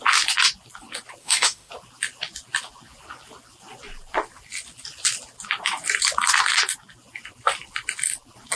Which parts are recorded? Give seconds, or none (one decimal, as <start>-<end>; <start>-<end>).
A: 0.0-1.2; 1.7-8.6